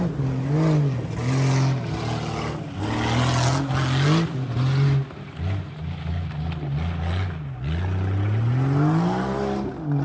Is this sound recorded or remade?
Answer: recorded